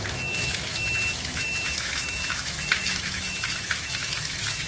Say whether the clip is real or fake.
fake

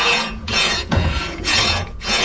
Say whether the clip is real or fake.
fake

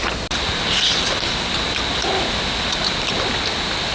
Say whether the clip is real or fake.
real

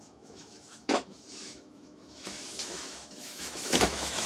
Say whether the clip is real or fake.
fake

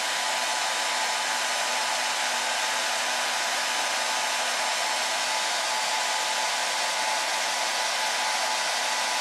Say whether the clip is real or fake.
real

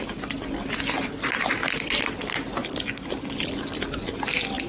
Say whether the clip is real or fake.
real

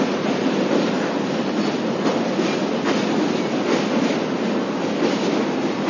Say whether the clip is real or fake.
real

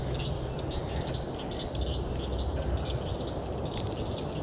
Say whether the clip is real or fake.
real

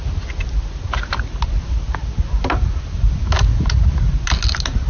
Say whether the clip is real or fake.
real